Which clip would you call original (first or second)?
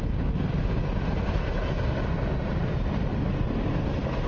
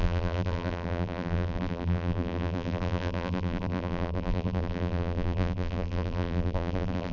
first